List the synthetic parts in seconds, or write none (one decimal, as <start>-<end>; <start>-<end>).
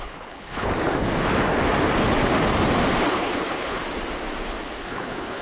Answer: 0.0-0.7; 3.1-3.8; 4.8-5.4